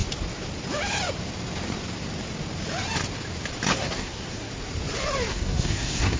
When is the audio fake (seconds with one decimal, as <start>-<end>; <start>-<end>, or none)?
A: 3.7-4.5; 5.3-6.2